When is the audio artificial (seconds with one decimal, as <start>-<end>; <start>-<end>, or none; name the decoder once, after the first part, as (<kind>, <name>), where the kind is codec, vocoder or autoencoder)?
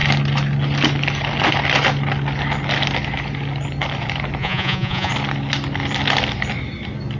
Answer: 4.4-5.1 (vocoder, Vocos)